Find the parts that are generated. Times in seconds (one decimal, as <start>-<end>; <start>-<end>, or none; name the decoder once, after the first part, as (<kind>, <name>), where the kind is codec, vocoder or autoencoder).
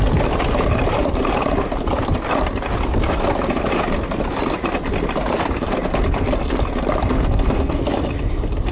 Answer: 7.0-7.8 (codec, SNAC)